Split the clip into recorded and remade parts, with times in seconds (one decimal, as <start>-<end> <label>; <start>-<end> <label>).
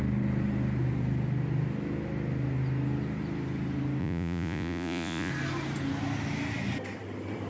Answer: 0.0-4.0 recorded; 4.0-5.3 remade; 5.3-7.5 recorded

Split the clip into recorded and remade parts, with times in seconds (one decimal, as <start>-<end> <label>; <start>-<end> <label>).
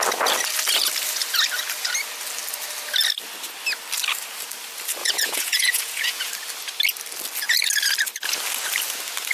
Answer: 0.0-5.0 recorded; 5.0-6.3 remade; 6.3-9.3 recorded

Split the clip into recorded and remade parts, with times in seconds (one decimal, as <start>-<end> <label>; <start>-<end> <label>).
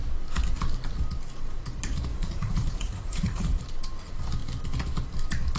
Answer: 0.0-2.1 recorded; 2.1-3.6 remade; 3.6-5.6 recorded